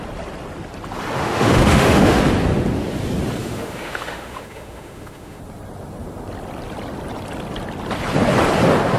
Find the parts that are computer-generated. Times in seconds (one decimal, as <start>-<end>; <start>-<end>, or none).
1.2-2.2; 3.4-5.4